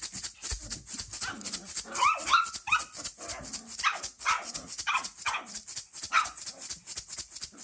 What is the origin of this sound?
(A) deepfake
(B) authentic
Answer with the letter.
B